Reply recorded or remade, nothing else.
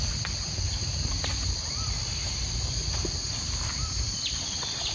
recorded